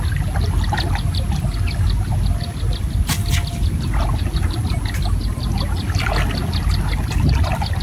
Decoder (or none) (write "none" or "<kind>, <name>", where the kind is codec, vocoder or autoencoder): none